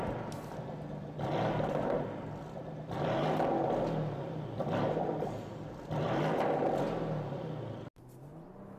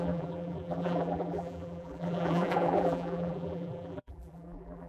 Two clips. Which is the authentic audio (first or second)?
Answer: first